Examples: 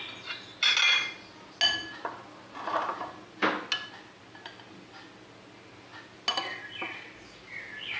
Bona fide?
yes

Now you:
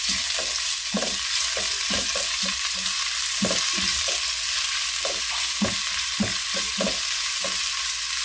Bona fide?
yes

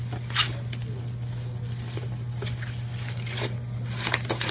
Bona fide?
yes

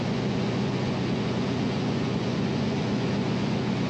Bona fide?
no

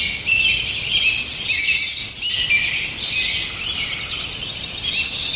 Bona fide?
yes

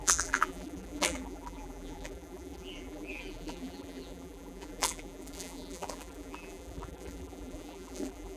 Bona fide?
no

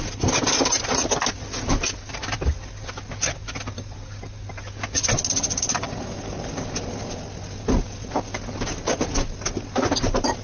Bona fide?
yes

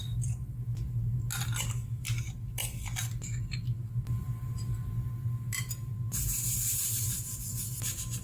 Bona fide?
yes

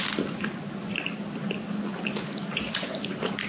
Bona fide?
yes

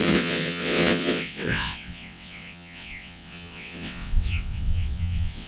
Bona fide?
no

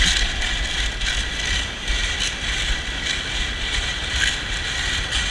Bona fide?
yes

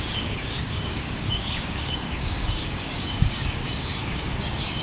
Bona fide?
no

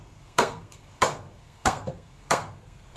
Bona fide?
no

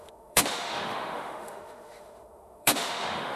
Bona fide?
no